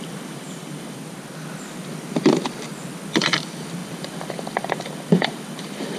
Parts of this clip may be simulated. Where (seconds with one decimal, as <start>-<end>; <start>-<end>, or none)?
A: 0.0-1.0; 3.2-6.0